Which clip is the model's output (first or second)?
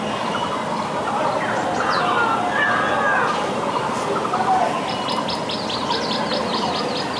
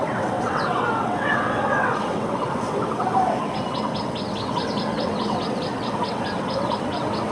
second